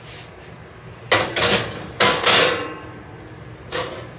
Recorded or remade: recorded